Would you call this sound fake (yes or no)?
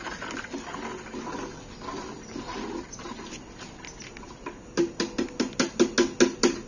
no